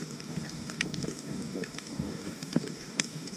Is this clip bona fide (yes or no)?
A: no